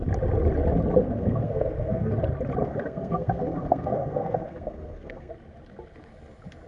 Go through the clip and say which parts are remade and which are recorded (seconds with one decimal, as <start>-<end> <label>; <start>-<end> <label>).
0.0-1.0 recorded; 1.0-2.1 remade; 2.1-2.6 recorded; 2.6-5.3 remade; 5.3-6.7 recorded